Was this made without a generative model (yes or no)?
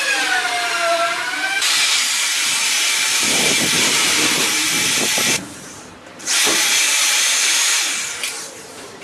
no